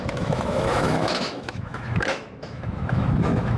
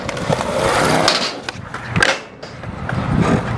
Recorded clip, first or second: second